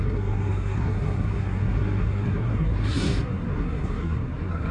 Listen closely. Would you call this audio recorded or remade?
remade